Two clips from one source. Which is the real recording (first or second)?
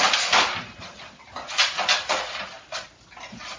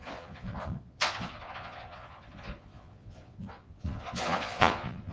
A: first